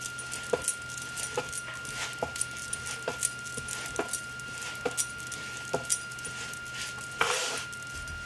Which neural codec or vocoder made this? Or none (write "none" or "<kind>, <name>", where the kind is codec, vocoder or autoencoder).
none